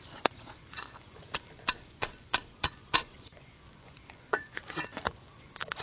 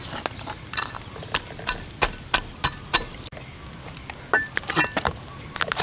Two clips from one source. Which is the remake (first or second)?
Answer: first